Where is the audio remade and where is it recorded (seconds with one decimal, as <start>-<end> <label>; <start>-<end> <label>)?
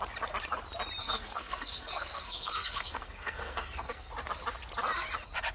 0.0-1.0 recorded; 1.0-4.1 remade; 4.1-5.5 recorded